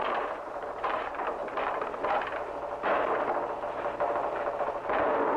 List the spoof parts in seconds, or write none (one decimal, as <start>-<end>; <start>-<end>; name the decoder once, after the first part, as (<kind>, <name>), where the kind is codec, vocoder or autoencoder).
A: 0.0-1.4 (vocoder, BigVGAN v2); 4.6-5.4